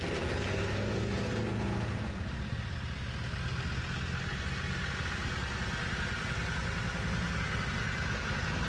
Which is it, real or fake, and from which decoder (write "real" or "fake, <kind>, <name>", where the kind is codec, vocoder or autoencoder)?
real